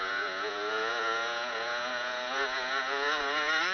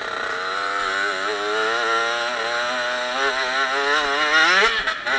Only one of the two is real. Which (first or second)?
second